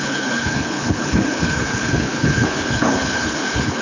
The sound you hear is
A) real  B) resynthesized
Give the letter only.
B